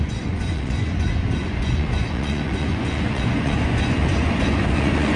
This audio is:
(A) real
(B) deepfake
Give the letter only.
B